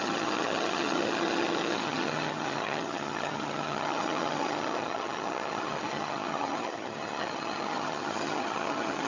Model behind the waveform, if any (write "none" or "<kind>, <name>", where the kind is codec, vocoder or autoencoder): vocoder, HiFi-GAN